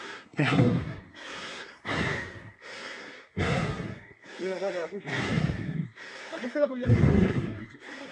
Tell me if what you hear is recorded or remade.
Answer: remade